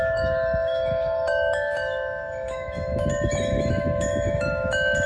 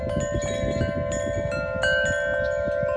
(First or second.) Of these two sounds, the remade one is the first